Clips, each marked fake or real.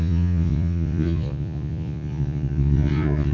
fake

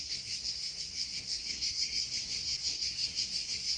fake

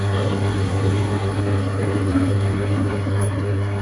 fake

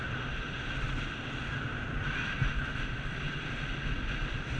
real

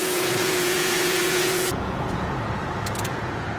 fake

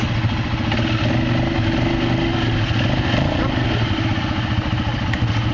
real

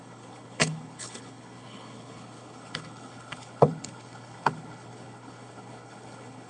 fake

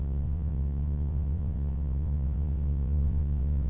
fake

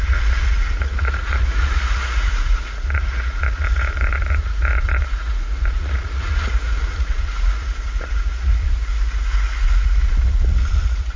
fake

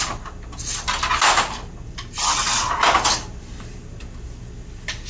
real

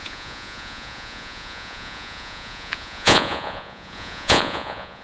fake